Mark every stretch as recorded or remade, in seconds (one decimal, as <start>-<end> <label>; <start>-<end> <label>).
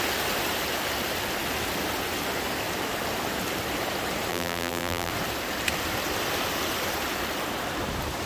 0.0-4.3 recorded; 4.3-5.1 remade; 5.1-8.3 recorded